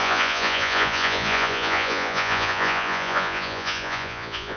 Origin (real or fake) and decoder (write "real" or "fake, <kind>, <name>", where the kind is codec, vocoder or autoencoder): fake, vocoder, Vocos